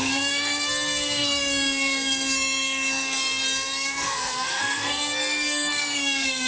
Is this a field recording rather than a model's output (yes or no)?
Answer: no